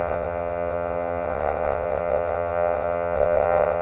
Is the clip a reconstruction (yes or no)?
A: yes